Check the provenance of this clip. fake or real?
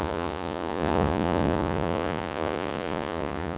fake